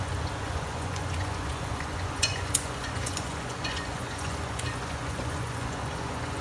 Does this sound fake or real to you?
fake